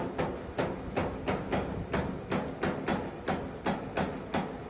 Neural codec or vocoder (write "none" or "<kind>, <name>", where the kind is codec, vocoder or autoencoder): none